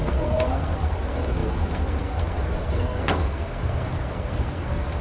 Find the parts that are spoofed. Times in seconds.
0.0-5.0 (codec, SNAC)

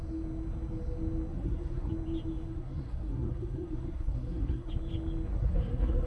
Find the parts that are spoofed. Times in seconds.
1.3-1.9 (codec, SNAC); 2.5-4.7; 5.3-6.1

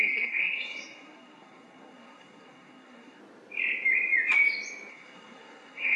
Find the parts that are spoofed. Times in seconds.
0.0-3.2 (codec, SNAC); 4.9-6.0